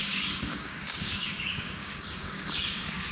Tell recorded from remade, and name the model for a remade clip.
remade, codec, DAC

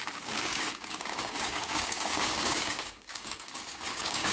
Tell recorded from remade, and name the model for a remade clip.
remade, codec, DAC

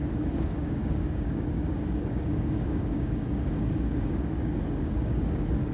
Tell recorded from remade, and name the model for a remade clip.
remade, codec, DAC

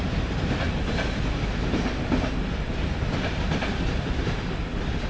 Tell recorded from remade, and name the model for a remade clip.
recorded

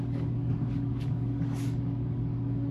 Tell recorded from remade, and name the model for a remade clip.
remade, codec, DAC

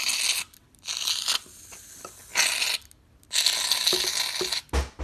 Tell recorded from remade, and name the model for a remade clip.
recorded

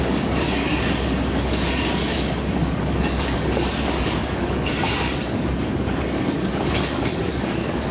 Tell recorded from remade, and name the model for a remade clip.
remade, codec, DAC